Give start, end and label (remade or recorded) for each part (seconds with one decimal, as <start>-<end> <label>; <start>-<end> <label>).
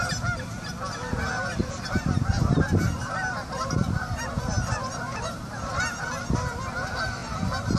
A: 0.0-1.6 recorded; 1.6-5.8 remade; 5.8-7.8 recorded